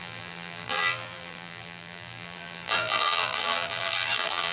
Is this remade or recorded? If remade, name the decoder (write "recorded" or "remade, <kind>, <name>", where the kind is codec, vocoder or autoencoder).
remade, vocoder, BigVGAN v2